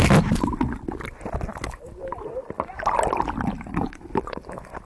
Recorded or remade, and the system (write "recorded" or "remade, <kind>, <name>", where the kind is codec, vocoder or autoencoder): recorded